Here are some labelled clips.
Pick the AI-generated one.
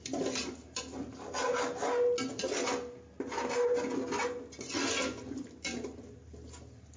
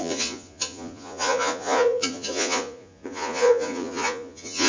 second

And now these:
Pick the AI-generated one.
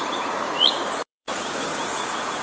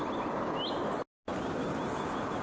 first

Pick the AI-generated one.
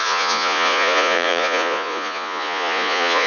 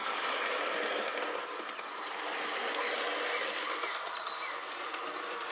first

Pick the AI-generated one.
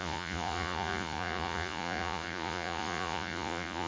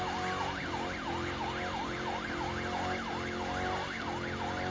first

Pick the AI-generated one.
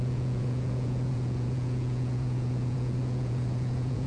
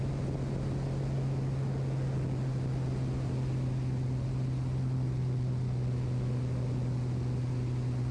first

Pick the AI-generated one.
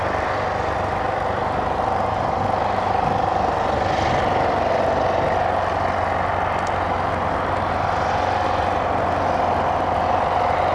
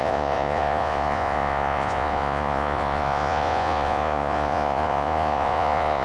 second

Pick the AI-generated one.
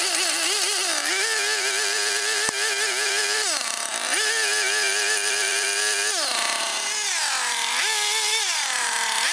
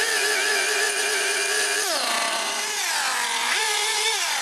second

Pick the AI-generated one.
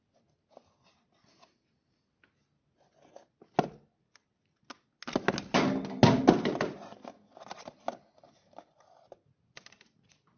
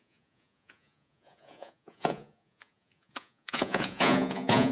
second